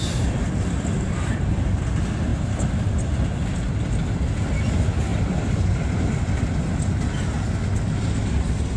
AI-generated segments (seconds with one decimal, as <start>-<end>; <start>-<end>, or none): none